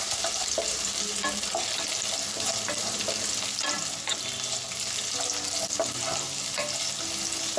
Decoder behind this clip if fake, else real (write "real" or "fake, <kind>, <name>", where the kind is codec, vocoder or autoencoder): real